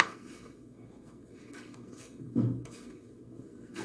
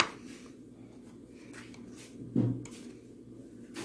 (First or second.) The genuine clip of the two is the second